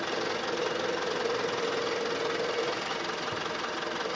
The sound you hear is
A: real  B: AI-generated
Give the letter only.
A